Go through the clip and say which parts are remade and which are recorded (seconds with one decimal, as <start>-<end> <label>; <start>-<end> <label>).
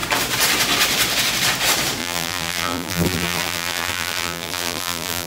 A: 0.0-2.0 recorded; 2.0-5.3 remade